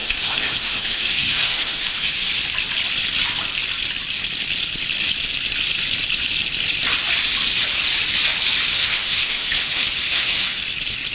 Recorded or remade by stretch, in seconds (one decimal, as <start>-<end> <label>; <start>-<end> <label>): 0.0-2.3 remade; 2.3-8.7 recorded; 8.7-10.6 remade; 10.6-11.1 recorded